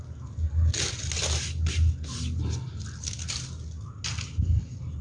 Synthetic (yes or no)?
no